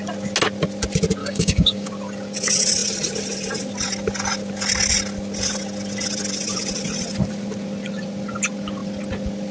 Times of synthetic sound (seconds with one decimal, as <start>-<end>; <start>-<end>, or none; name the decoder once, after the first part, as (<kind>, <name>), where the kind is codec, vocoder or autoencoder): 1.2-1.9 (codec, DAC)